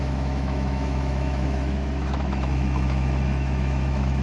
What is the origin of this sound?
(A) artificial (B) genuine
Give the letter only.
A